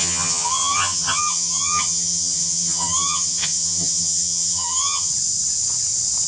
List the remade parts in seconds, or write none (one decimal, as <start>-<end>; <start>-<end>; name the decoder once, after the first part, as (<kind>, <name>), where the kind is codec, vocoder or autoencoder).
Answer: 0.0-5.1 (vocoder, HiFi-GAN)